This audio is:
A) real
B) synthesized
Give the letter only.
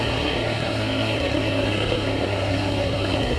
B